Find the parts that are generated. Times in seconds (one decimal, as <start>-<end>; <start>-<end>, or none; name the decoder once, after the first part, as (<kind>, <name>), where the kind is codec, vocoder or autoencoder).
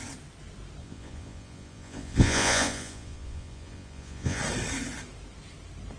0.8-4.4 (vocoder, Vocos)